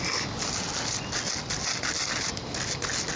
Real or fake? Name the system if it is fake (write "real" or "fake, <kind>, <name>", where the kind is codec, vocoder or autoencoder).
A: real